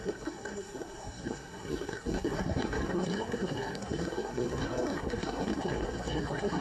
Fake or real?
fake